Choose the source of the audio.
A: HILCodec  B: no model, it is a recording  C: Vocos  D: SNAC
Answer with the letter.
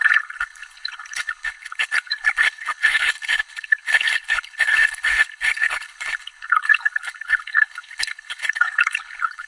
A